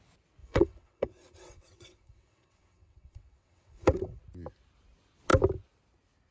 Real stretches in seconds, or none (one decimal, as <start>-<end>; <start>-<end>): 0.0-0.4; 4.2-6.3